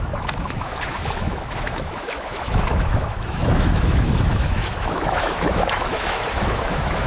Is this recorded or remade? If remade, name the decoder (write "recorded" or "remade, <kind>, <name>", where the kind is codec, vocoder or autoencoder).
remade, autoencoder, DAC-VAE